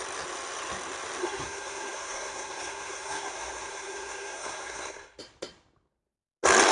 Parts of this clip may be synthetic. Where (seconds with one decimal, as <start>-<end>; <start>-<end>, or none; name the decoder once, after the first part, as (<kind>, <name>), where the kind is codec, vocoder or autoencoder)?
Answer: 1.2-5.2 (codec, SNAC)

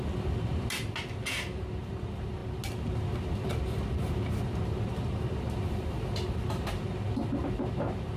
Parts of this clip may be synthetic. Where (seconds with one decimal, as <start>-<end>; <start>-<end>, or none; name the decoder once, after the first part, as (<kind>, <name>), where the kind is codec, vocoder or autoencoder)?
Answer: none

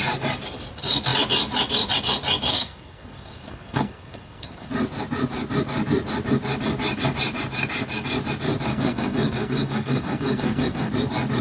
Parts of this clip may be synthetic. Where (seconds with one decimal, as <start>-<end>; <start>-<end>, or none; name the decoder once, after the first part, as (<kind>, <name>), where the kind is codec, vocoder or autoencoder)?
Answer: 2.5-4.7 (codec, SNAC); 8.7-10.9